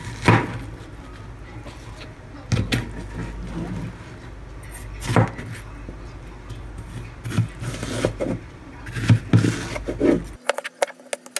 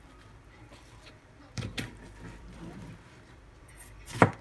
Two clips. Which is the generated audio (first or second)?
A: second